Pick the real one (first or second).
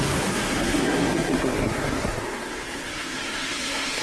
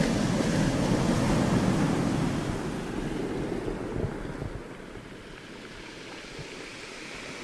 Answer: second